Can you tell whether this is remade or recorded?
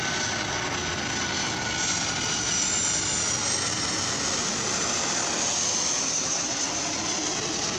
recorded